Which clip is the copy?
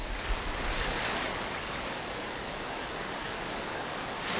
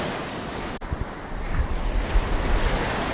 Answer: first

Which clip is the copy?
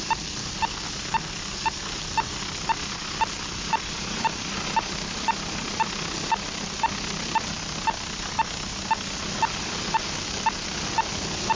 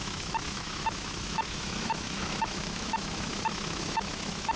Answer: second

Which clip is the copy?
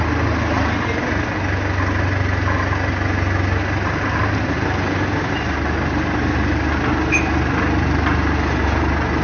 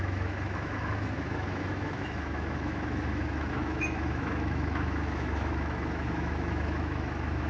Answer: second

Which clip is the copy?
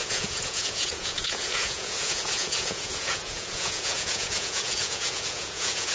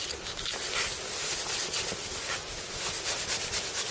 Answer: first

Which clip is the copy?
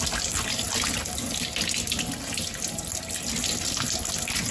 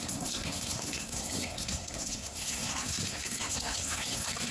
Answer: second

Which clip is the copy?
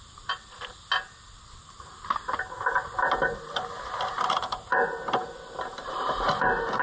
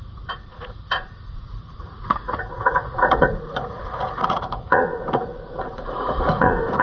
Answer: second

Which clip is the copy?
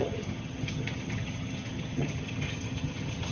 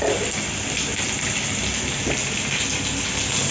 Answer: first